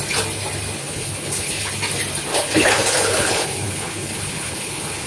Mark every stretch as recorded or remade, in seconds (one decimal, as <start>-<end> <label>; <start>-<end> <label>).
0.0-0.8 recorded; 0.8-1.7 remade; 1.7-2.3 recorded; 2.3-5.1 remade